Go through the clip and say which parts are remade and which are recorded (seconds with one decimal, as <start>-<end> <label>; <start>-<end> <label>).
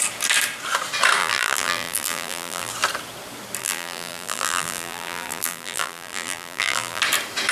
0.0-1.2 recorded; 1.2-2.7 remade; 2.7-3.6 recorded; 3.6-7.0 remade; 7.0-7.5 recorded